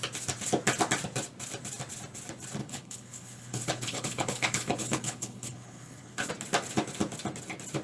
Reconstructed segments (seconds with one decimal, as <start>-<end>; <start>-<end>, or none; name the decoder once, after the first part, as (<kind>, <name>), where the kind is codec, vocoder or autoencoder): 2.6-6.3 (codec, HILCodec)